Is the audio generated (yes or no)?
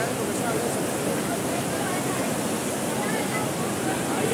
no